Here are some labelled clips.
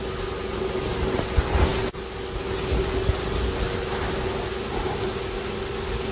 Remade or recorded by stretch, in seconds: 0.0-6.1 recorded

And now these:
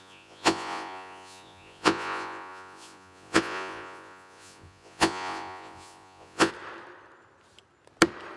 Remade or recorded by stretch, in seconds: 0.0-6.5 remade; 6.5-8.4 recorded

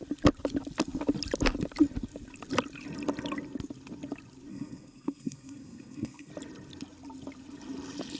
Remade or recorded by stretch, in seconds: 0.0-4.5 recorded; 4.5-6.3 remade; 6.3-8.2 recorded

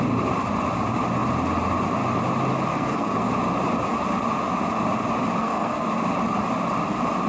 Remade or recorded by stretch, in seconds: 0.0-2.7 recorded; 2.7-3.3 remade; 3.3-5.4 recorded; 5.4-5.9 remade; 5.9-7.3 recorded

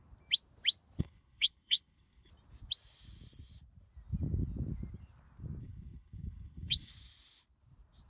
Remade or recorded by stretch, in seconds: 0.0-1.0 recorded; 1.0-2.3 remade; 2.3-5.6 recorded; 5.6-6.9 remade; 6.9-8.1 recorded